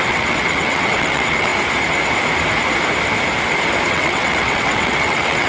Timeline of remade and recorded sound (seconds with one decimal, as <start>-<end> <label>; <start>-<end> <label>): 0.0-1.5 remade; 1.5-3.9 recorded; 3.9-5.5 remade